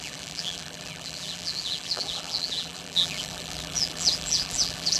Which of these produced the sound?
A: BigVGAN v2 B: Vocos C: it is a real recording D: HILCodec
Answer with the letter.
A